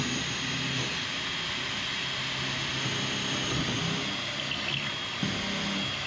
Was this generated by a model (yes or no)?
no